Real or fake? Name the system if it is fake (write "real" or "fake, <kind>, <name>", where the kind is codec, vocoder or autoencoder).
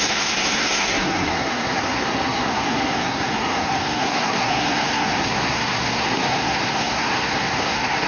fake, codec, SNAC